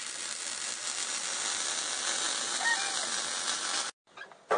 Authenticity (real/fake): real